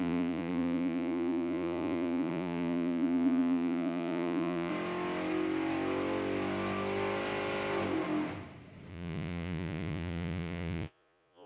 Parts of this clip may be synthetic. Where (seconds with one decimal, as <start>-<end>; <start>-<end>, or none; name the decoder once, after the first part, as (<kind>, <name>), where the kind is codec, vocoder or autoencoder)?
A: 0.0-4.7 (vocoder, Vocos); 8.9-11.5